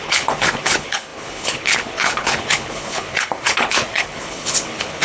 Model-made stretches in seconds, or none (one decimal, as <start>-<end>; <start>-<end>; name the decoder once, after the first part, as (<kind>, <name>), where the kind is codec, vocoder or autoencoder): 0.0-5.0 (codec, HILCodec)